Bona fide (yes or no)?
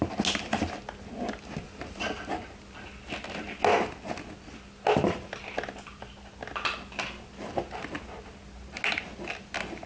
yes